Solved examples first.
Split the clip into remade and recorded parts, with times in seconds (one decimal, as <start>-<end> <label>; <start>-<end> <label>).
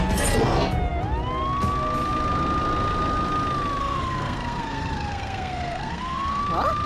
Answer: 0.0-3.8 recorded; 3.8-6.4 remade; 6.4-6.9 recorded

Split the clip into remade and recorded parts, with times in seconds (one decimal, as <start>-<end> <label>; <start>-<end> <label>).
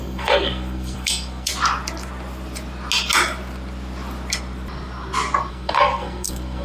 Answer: 0.0-1.5 remade; 1.5-5.5 recorded; 5.5-6.6 remade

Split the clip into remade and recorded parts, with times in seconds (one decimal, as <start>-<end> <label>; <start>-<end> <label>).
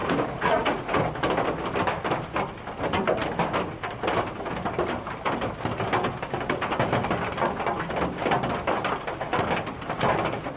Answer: 0.0-1.0 remade; 1.0-10.6 recorded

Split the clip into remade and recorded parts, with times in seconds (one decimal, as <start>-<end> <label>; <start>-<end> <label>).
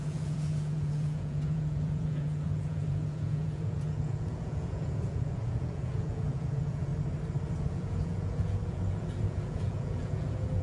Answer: 0.0-6.9 remade; 6.9-7.7 recorded; 7.7-10.6 remade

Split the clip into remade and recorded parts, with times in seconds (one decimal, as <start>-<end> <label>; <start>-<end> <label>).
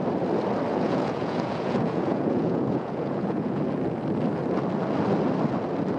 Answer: 0.0-0.7 recorded; 0.7-3.6 remade; 3.6-6.0 recorded